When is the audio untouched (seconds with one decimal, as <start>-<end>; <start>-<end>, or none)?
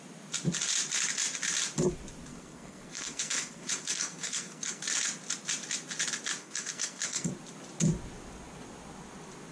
0.0-2.3; 4.8-6.4; 7.3-9.5